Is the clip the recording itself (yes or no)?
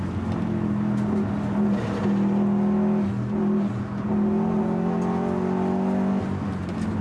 yes